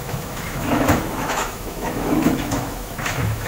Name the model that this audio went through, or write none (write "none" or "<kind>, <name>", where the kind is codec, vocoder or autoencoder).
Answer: autoencoder, DAC-VAE